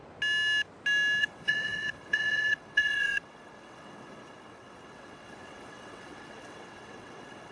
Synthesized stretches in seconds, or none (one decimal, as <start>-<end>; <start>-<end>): 1.2-7.5